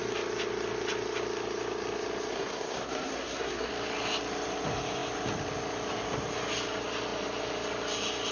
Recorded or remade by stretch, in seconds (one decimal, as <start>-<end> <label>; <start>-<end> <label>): 0.0-2.3 recorded; 2.3-3.7 remade; 3.7-8.3 recorded

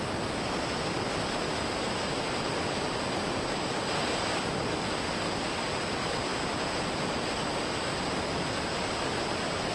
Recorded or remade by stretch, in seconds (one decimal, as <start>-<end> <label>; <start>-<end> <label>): 0.0-9.7 recorded